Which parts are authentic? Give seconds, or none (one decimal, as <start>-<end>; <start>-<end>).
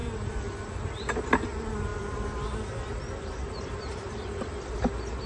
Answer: 0.0-5.3